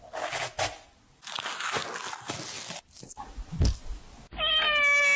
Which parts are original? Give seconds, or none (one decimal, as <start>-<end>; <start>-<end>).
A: 0.0-5.2